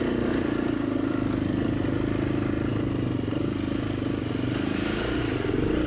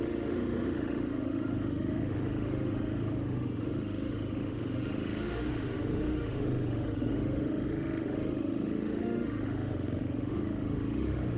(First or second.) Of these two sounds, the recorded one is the first